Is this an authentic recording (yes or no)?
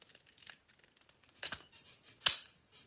yes